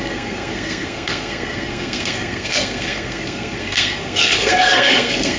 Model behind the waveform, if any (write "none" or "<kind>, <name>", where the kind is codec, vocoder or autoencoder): codec, SNAC